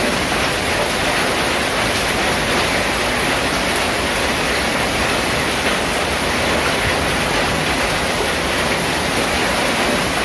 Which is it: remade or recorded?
recorded